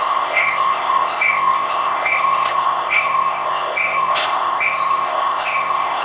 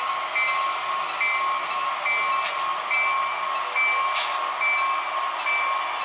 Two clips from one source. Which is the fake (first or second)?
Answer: first